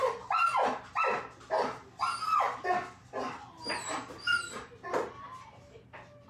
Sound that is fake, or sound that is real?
real